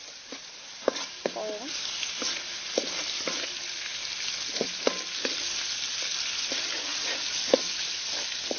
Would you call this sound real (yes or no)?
yes